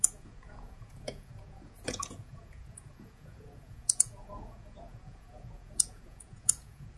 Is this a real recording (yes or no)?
no